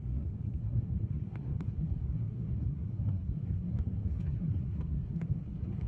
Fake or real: fake